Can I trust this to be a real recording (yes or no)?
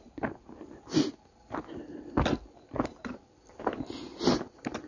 yes